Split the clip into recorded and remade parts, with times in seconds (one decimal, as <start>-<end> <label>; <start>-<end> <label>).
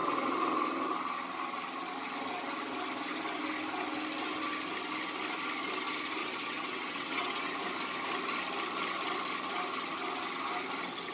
0.0-6.2 recorded; 6.2-7.6 remade; 7.6-11.1 recorded